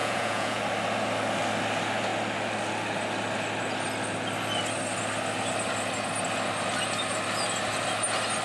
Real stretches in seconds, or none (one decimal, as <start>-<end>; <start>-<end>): 0.6-8.4